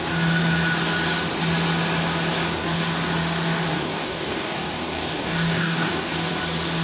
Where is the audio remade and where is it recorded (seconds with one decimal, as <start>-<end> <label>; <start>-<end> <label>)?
0.0-3.7 recorded; 3.7-6.3 remade; 6.3-6.8 recorded